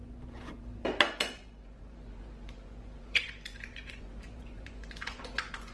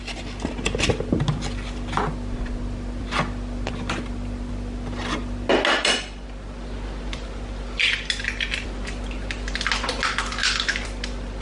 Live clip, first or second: second